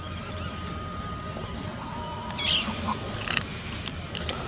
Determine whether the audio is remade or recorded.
recorded